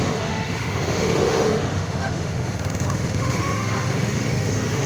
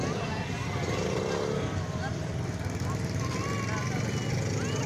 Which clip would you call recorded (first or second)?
second